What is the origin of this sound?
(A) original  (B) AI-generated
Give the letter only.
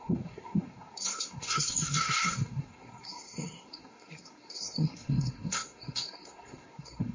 B